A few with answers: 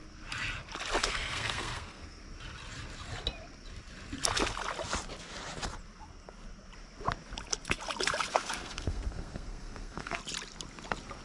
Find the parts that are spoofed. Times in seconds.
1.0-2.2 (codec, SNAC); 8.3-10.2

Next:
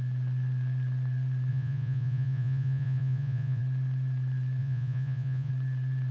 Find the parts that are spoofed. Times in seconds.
1.5-3.6 (vocoder, Vocos); 4.6-5.5

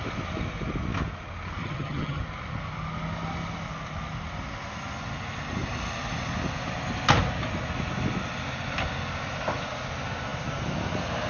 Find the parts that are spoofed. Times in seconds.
1.6-2.2 (vocoder, HiFi-GAN)

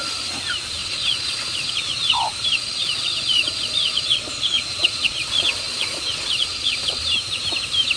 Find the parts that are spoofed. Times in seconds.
0.8-2.1 (vocoder, Vocos); 2.8-7.0